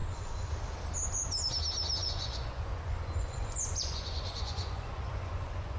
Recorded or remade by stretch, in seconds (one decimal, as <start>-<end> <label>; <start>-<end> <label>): 0.0-0.5 remade; 0.5-2.0 recorded; 2.0-5.8 remade